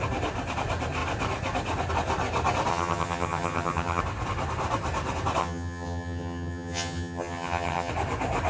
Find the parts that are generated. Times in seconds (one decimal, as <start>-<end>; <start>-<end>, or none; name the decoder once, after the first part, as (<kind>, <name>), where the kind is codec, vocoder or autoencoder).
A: 2.7-4.0 (vocoder, HiFi-GAN); 5.4-7.9